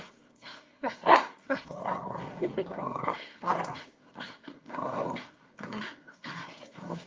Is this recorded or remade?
remade